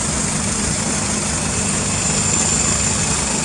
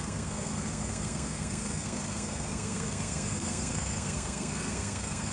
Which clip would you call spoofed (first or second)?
second